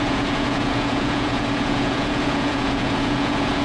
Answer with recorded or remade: remade